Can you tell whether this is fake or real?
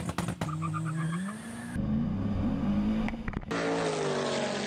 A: real